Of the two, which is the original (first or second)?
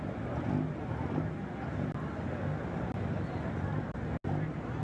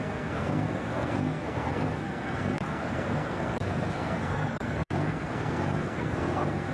first